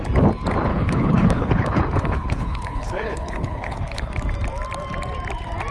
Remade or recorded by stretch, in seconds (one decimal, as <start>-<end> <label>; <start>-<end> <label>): 0.0-0.7 recorded; 0.7-4.1 remade; 4.1-5.7 recorded